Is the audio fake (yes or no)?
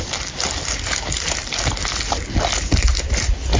no